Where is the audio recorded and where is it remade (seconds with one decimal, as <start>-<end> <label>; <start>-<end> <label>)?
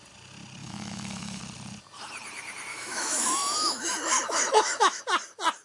0.0-0.6 recorded; 0.6-1.4 remade; 1.4-2.7 recorded; 2.7-5.0 remade; 5.0-5.6 recorded